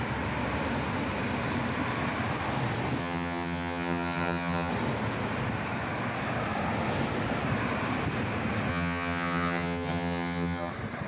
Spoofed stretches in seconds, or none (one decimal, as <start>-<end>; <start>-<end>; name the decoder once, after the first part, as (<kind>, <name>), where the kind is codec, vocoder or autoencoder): 3.0-4.7 (vocoder, HiFi-GAN); 8.7-10.7